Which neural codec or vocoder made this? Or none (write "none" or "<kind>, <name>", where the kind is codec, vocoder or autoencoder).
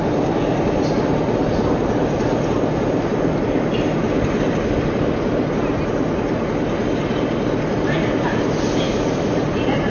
none